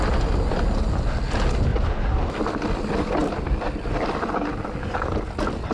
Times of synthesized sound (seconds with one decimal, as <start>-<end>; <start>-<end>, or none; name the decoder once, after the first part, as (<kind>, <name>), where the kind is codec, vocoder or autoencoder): 1.7-2.4 (vocoder, BigVGAN v2)

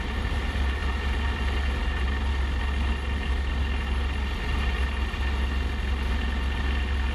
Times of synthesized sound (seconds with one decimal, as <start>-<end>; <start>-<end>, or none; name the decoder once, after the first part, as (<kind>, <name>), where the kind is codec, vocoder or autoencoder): none

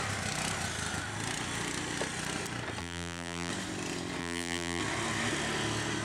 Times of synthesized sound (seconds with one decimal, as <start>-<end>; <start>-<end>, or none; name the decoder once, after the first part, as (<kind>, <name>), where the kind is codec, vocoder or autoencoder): 2.8-3.5 (vocoder, BigVGAN v2); 4.2-4.8